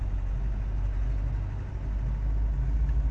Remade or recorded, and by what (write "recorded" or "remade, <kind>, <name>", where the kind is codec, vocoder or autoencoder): recorded